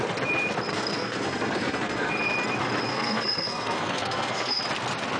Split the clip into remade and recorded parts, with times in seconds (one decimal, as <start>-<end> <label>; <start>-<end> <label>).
0.0-0.7 recorded; 0.7-2.1 remade; 2.1-2.9 recorded; 2.9-4.6 remade; 4.6-5.2 recorded